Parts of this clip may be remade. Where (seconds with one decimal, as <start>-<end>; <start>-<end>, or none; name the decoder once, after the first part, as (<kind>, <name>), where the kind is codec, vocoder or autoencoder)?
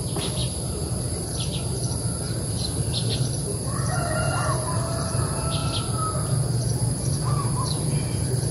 0.0-5.6 (vocoder, BigVGAN v2); 7.8-8.5